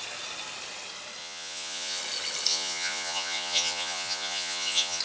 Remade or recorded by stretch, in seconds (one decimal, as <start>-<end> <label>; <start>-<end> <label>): 0.0-1.2 recorded; 1.2-2.0 remade; 2.0-2.5 recorded; 2.5-5.0 remade

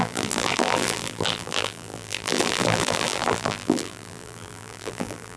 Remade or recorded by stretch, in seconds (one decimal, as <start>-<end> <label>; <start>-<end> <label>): 0.0-5.4 remade

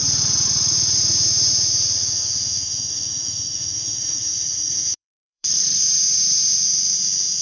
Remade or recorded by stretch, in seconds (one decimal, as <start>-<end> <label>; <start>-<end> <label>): 0.0-2.0 recorded; 2.0-5.5 remade; 5.5-7.4 recorded

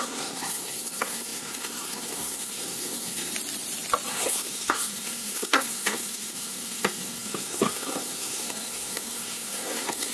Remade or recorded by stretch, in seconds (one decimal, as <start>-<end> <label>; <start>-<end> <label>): 0.0-3.3 remade; 3.3-4.1 recorded; 4.1-10.1 remade

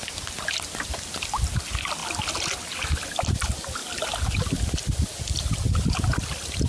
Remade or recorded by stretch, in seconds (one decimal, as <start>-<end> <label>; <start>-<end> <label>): 0.0-6.7 recorded